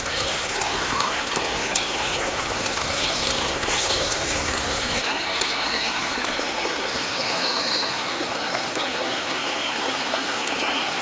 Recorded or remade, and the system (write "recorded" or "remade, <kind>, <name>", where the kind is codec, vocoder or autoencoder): remade, codec, SNAC